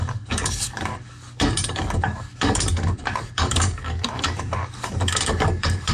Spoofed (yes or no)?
yes